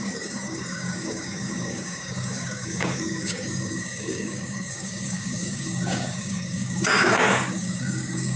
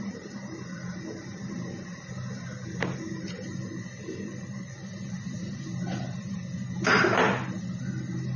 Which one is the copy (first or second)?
first